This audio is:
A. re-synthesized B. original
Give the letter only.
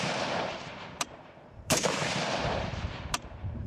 A